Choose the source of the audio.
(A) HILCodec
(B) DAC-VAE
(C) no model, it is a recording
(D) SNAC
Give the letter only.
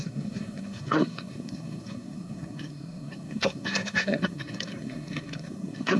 D